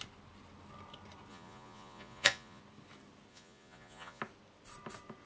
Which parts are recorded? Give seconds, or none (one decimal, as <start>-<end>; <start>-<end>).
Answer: 0.0-1.3; 2.6-3.3; 4.2-5.3